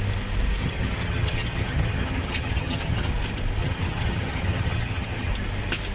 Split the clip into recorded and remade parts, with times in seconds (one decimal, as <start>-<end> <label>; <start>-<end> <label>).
0.0-0.6 recorded; 0.6-3.1 remade; 3.1-3.6 recorded; 3.6-5.3 remade; 5.3-5.9 recorded